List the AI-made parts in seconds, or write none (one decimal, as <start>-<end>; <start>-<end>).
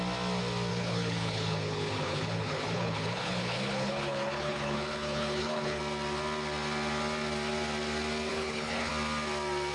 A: 0.7-5.8; 8.3-8.9